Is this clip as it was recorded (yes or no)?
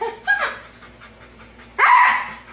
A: yes